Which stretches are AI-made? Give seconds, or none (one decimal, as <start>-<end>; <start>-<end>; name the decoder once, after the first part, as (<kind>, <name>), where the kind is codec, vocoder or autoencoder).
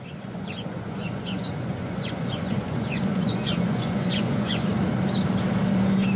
0.0-4.7 (vocoder, Vocos)